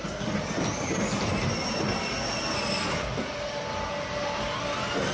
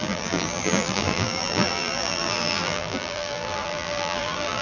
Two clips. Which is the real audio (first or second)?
first